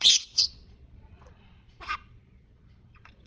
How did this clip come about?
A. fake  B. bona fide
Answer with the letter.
A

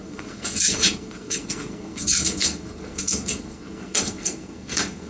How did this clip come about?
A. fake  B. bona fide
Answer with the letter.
A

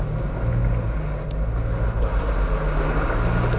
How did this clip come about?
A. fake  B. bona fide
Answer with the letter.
B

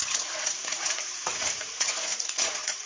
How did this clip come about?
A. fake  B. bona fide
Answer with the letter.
A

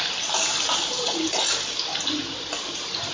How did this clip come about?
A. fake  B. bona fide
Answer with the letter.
B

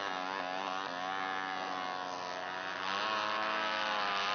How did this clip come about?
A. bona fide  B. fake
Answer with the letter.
A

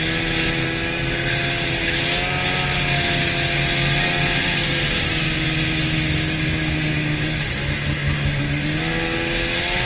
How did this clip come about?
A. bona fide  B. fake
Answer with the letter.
A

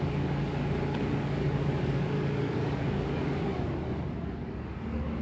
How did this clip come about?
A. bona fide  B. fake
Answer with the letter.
B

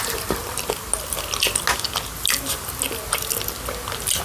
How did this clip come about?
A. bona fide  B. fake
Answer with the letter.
A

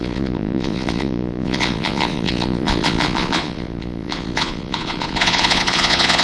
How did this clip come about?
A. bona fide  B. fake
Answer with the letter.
B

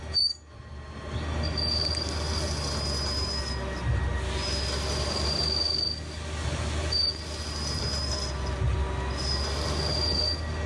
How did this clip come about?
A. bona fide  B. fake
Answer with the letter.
A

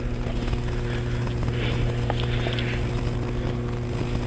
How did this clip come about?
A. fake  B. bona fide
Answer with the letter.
B